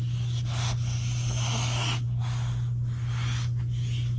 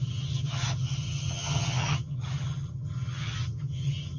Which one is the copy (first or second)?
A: second